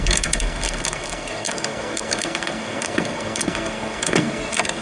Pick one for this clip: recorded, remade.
remade